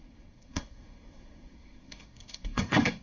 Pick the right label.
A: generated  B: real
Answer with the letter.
A